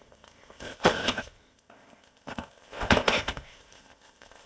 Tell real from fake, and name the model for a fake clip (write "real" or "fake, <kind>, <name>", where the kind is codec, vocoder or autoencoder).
fake, codec, ZipCodec